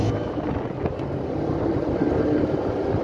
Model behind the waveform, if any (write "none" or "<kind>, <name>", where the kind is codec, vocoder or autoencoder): none